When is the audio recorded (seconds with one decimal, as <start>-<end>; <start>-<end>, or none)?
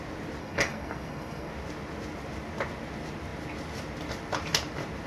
0.0-0.4; 1.5-5.1